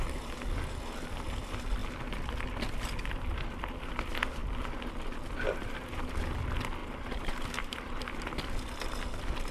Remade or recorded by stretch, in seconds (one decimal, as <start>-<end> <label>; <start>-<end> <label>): 0.0-6.8 recorded; 6.8-7.8 remade; 7.8-9.5 recorded